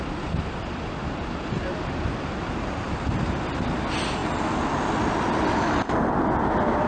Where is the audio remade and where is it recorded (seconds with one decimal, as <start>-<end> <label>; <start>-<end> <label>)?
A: 0.0-1.0 recorded; 1.0-2.9 remade; 2.9-6.9 recorded